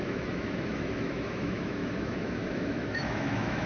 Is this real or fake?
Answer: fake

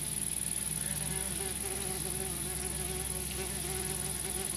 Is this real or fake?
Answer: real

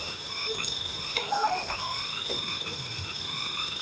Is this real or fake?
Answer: fake